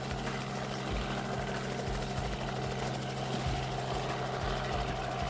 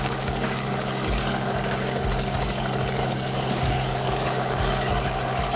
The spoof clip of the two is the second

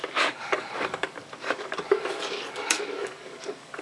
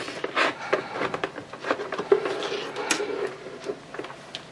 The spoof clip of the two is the first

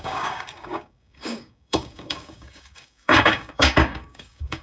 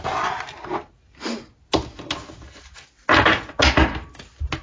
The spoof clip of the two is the first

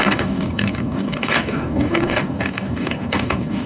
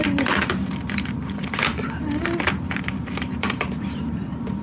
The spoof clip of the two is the first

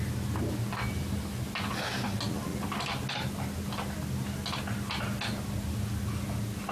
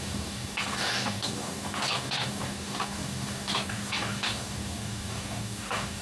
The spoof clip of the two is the second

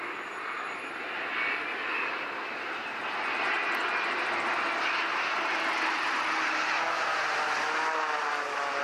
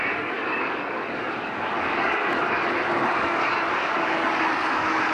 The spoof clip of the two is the second